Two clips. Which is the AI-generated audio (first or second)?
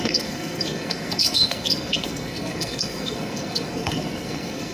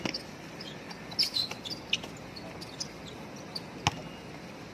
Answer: first